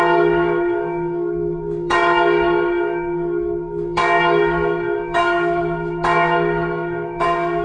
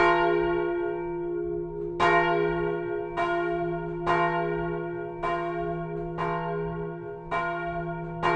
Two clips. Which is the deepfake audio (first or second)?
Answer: first